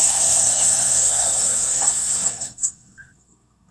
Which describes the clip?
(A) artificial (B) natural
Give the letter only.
A